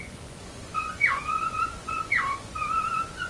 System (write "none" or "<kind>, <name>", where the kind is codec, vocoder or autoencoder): vocoder, Vocos